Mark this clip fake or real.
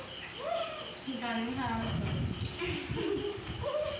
real